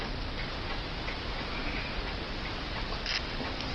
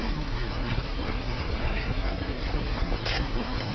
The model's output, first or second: second